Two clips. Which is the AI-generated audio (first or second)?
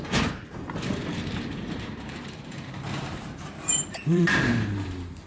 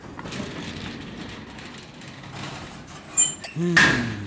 first